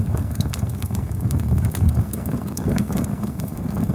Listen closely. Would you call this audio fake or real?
fake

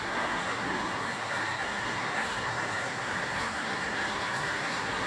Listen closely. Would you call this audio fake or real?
fake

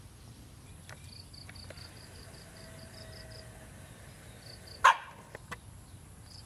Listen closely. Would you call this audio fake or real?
real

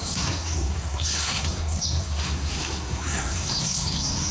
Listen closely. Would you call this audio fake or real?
fake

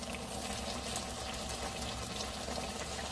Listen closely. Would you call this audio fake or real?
real